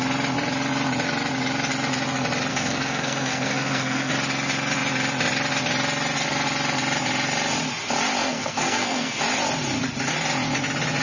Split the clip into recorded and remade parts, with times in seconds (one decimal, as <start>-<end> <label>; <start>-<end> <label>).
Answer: 0.0-2.5 recorded; 2.5-4.1 remade; 4.1-8.2 recorded; 8.2-9.2 remade; 9.2-11.0 recorded